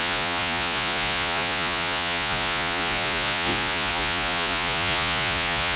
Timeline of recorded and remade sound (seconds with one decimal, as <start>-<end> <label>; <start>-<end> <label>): 0.0-5.8 remade